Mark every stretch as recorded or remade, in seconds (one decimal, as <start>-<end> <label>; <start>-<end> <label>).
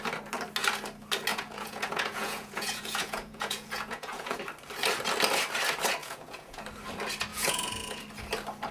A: 0.0-1.3 recorded; 1.3-4.4 remade; 4.4-6.0 recorded; 6.0-6.6 remade; 6.6-7.3 recorded; 7.3-8.0 remade; 8.0-8.7 recorded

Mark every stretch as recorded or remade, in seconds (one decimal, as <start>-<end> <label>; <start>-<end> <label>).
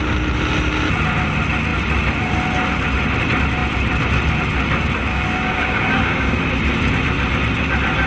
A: 0.0-5.1 recorded; 5.1-6.4 remade; 6.4-8.1 recorded